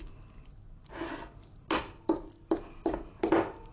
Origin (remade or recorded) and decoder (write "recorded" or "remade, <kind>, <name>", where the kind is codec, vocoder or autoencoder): recorded